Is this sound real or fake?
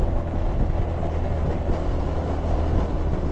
real